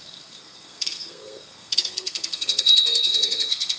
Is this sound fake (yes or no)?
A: yes